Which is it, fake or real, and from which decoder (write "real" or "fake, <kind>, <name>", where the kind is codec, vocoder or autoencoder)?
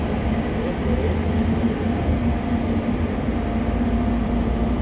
real